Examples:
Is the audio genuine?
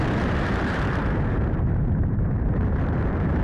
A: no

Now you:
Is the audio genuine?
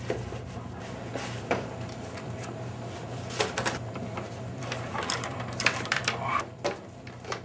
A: no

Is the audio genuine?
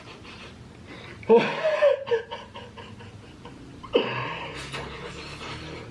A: yes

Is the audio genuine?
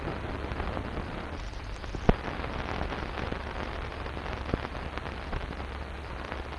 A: yes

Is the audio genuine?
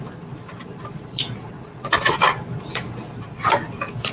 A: yes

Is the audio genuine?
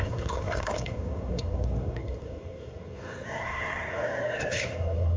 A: no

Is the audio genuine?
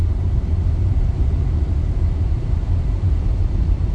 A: no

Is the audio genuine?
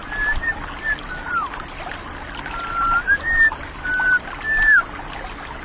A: yes